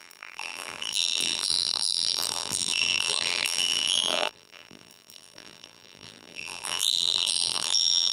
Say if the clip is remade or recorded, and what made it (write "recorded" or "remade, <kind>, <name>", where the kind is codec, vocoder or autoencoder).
remade, vocoder, BigVGAN v2